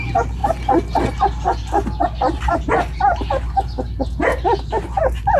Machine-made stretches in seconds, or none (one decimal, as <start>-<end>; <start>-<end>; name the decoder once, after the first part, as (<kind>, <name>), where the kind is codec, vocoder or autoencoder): none